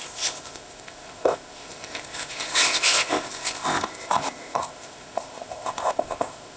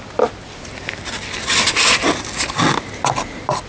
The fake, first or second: first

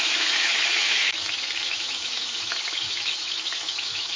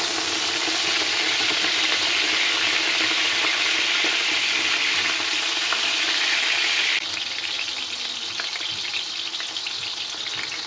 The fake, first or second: first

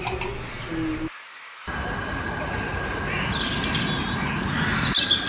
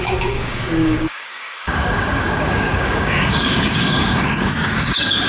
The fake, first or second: second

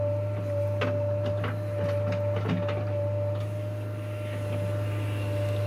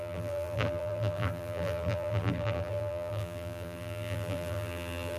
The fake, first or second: second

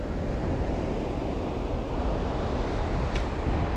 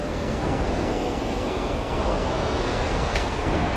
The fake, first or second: second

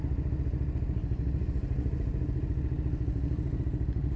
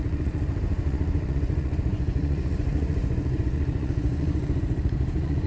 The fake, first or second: second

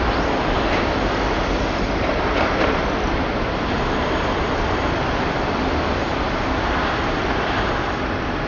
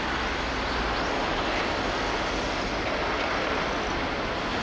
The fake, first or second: first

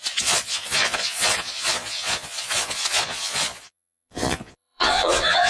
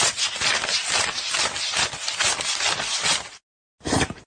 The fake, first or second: first